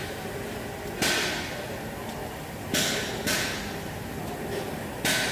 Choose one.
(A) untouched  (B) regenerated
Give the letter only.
A